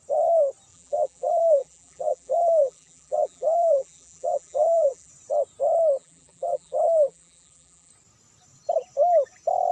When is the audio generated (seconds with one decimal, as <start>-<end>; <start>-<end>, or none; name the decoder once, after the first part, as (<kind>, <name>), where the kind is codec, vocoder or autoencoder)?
0.7-5.1 (vocoder, BigVGAN v2); 6.0-7.9

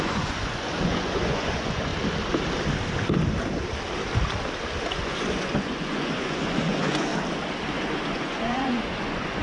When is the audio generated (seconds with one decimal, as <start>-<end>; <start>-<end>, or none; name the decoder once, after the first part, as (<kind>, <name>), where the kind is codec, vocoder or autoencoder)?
0.0-1.9 (vocoder, Vocos); 4.9-7.1; 7.7-9.4

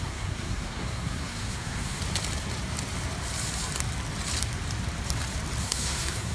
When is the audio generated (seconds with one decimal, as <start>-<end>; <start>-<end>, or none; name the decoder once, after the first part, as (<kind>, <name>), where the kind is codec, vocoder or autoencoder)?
0.0-2.0 (codec, SNAC); 5.6-6.3

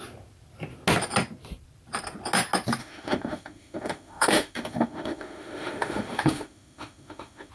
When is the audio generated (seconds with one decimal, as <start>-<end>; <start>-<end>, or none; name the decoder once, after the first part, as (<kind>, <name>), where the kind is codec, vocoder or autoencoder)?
2.8-7.5 (autoencoder, DAC-VAE)

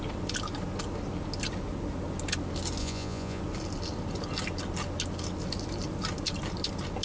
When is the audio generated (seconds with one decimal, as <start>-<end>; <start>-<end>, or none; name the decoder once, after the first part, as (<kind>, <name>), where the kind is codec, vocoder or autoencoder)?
2.8-3.4 (vocoder, Vocos)